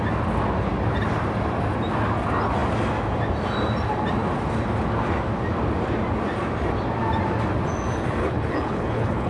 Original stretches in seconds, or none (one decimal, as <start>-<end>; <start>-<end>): 0.0-8.2